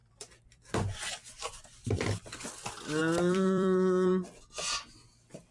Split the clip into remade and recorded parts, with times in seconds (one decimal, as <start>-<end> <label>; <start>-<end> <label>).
0.0-5.5 remade